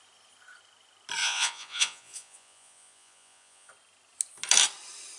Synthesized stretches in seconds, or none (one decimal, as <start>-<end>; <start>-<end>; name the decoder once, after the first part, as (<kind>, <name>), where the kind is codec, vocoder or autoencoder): 1.2-3.7 (vocoder, Vocos)

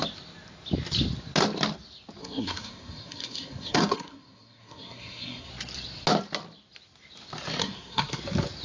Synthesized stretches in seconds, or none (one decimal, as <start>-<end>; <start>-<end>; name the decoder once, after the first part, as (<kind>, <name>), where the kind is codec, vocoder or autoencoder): 2.2-5.5 (codec, SNAC); 7.6-8.2